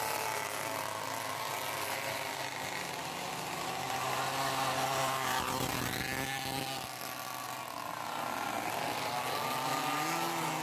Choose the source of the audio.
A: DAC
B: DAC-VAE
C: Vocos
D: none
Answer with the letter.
D